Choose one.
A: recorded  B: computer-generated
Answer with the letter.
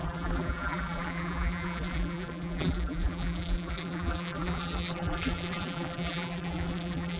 B